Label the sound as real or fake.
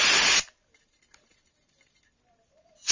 real